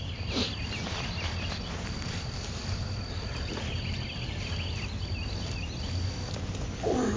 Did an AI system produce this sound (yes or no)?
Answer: no